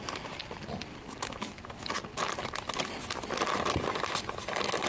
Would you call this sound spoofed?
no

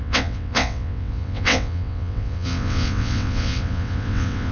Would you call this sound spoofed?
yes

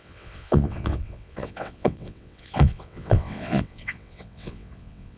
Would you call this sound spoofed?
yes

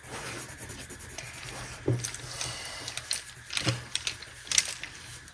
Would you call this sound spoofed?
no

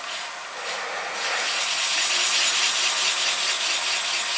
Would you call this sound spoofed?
no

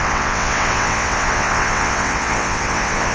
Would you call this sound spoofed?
yes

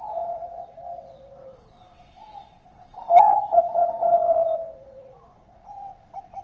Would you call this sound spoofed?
yes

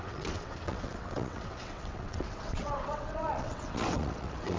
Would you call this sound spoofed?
yes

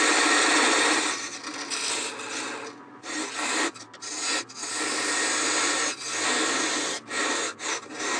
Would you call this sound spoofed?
no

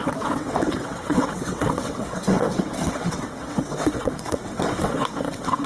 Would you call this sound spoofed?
yes